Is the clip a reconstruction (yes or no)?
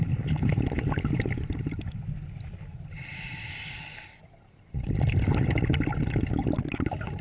yes